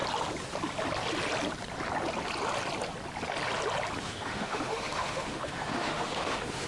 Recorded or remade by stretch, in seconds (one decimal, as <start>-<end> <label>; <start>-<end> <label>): 0.0-4.0 recorded; 4.0-6.7 remade